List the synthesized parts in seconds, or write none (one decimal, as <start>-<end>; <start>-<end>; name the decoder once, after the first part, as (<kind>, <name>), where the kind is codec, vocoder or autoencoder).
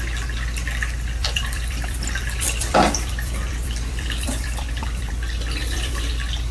1.2-5.1 (vocoder, BigVGAN v2); 5.6-6.1